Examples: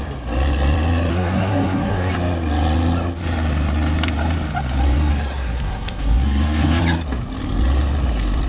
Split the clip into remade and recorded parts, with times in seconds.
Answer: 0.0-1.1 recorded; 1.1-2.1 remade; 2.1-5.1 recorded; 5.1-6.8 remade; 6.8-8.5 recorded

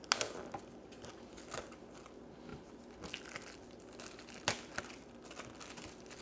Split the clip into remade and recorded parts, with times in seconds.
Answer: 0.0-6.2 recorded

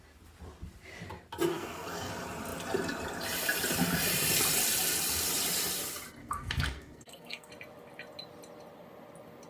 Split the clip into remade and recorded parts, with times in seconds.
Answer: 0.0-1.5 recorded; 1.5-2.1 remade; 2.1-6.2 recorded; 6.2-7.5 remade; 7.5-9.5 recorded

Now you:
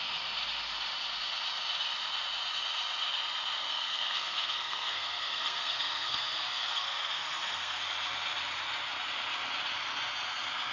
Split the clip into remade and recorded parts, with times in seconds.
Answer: 0.0-3.6 recorded; 3.6-7.8 remade; 7.8-10.7 recorded

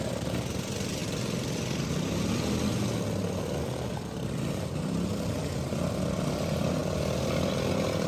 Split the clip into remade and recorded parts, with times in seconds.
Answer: 0.0-8.1 recorded